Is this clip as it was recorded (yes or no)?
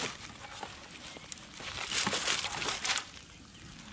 yes